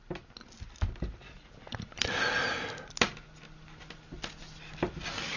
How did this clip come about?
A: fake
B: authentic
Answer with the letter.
B